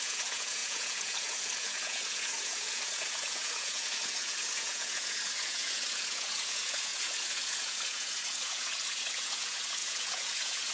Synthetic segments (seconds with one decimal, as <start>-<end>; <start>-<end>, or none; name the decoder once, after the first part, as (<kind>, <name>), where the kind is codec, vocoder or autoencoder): 0.0-10.7 (vocoder, Vocos)